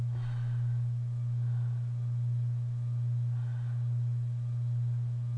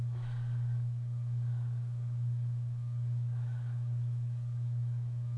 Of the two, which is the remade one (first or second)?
second